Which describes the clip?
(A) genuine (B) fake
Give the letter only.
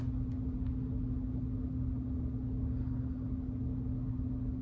A